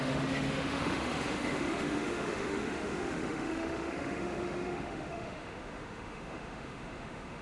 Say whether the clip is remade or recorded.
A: remade